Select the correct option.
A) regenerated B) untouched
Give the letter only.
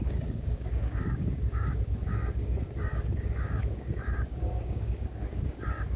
A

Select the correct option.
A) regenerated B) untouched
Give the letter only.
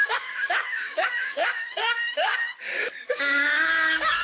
A